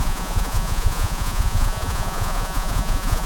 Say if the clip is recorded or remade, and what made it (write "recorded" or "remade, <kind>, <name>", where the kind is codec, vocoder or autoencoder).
remade, vocoder, Vocos